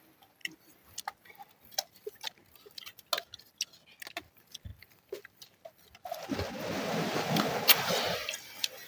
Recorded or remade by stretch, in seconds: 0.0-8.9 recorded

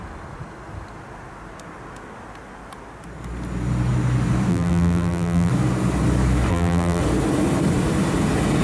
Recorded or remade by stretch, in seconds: 0.0-4.5 recorded; 4.5-5.5 remade; 5.5-6.5 recorded; 6.5-7.0 remade; 7.0-8.6 recorded

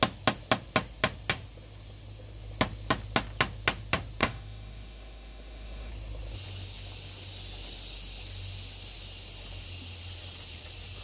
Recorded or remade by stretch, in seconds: 0.0-4.2 recorded; 4.2-5.9 remade; 5.9-11.0 recorded

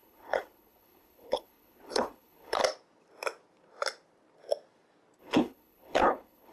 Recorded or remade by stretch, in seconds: 0.0-2.6 remade; 2.6-5.2 recorded; 5.2-6.5 remade

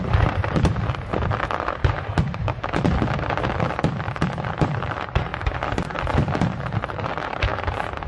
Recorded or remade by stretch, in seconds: 0.0-1.1 remade; 1.1-4.6 recorded; 4.6-5.3 remade; 5.3-6.4 recorded; 6.4-8.1 remade

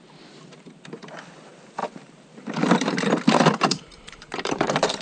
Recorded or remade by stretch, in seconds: 0.0-1.8 recorded; 1.8-5.0 remade